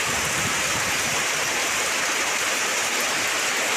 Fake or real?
fake